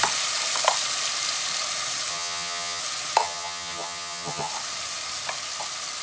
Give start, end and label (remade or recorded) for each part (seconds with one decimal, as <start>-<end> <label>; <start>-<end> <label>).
0.0-2.1 recorded; 2.1-2.8 remade; 2.8-3.2 recorded; 3.2-4.5 remade; 4.5-6.0 recorded